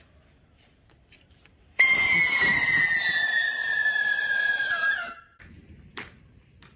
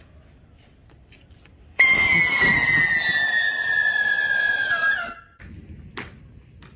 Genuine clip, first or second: second